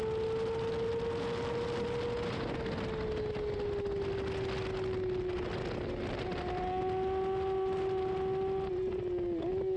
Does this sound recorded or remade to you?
recorded